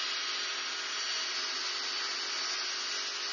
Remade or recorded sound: recorded